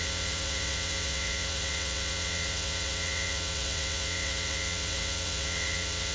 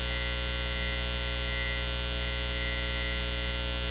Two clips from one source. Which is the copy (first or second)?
first